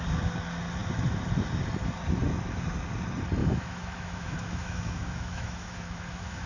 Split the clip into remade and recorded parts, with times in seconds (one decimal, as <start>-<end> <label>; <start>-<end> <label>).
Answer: 0.0-3.4 recorded; 3.4-6.5 remade